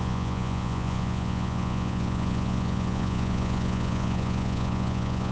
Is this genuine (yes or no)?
no